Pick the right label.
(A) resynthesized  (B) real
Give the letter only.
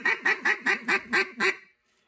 B